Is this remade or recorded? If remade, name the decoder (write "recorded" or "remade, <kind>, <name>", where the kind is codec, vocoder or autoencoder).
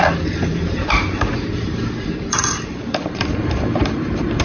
remade, vocoder, BigVGAN v2